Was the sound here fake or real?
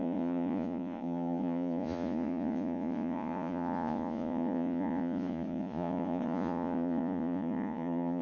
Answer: fake